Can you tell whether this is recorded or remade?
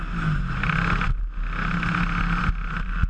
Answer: recorded